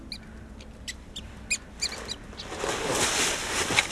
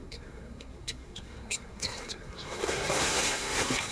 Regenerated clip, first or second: second